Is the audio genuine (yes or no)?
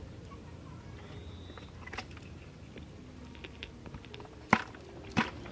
yes